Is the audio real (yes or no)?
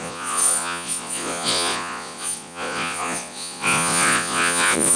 no